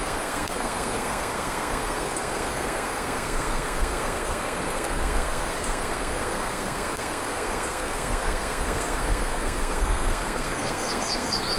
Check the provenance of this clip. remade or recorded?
remade